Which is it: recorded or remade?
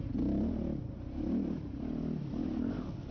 recorded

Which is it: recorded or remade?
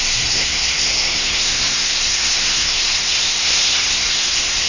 remade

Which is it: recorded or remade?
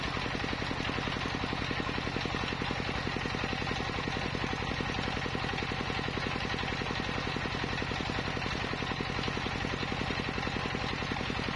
recorded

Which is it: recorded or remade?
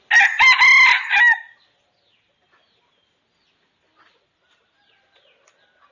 recorded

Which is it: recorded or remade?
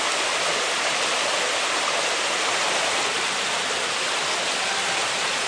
recorded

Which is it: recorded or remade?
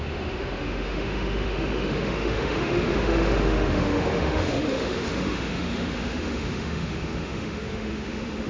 remade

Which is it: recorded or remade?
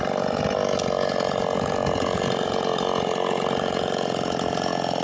recorded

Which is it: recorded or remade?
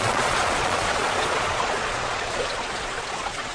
remade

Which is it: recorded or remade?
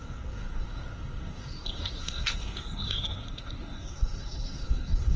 remade